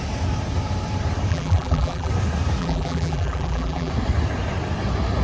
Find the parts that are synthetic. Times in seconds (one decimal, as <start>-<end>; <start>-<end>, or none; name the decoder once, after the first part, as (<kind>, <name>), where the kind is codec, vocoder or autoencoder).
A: 1.3-2.1 (vocoder, BigVGAN v2); 2.6-3.9